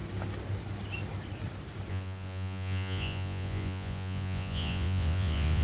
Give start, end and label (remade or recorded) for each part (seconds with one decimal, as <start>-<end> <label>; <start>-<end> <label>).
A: 0.0-1.9 recorded; 1.9-5.6 remade